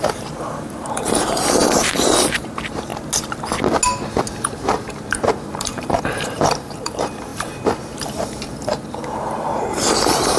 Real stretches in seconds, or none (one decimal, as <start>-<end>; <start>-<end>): 2.9-4.4